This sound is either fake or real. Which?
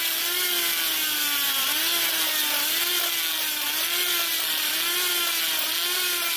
real